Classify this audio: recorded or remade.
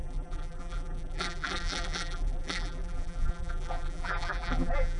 remade